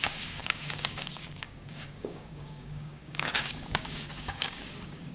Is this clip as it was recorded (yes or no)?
no